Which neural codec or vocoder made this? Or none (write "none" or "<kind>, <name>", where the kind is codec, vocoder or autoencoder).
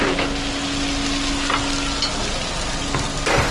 none